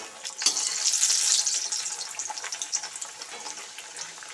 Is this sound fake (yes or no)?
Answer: no